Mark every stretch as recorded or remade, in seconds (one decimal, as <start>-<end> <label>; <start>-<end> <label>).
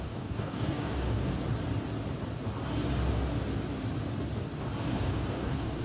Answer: 0.0-1.3 remade; 1.3-4.8 recorded; 4.8-5.8 remade